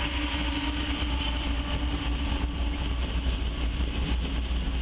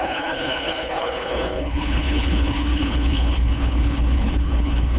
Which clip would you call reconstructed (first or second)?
second